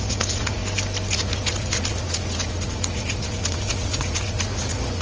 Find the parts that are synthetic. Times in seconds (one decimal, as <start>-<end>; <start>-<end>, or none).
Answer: 0.0-0.6; 1.1-5.0